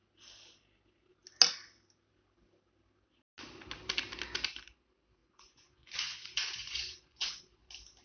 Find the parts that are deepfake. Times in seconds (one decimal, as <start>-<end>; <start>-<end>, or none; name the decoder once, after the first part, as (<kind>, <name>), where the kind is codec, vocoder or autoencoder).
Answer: 5.2-7.4 (vocoder, Vocos)